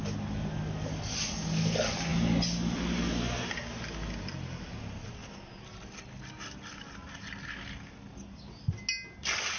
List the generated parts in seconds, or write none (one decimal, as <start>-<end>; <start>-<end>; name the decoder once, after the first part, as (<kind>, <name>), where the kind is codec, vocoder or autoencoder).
none